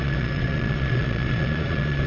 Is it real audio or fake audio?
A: fake